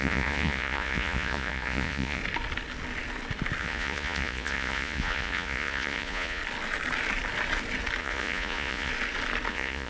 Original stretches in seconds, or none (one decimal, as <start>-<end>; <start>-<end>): 2.2-3.6; 6.4-8.0; 8.9-9.5